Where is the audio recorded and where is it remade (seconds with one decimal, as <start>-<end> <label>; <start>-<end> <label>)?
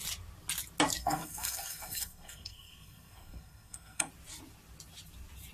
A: 0.0-1.0 recorded; 1.0-4.1 remade; 4.1-5.5 recorded